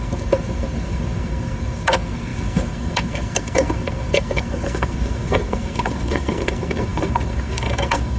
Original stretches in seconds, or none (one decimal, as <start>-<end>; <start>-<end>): none